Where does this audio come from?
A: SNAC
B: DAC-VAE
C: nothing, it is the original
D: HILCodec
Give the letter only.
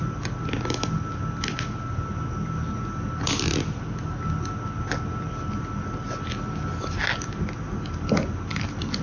C